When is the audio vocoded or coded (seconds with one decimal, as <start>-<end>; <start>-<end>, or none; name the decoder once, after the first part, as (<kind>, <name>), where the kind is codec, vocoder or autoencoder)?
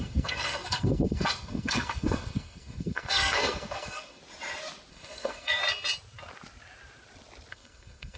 0.0-4.2 (codec, SNAC); 4.9-5.6; 7.5-8.2